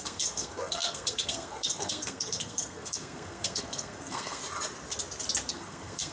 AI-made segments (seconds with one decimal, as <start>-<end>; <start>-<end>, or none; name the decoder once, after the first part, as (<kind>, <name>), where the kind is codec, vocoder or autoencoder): 0.0-4.4 (codec, SNAC); 5.5-6.1